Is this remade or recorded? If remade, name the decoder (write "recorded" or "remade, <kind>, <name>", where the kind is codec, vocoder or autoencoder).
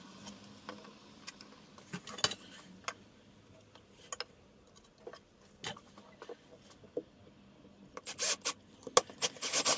recorded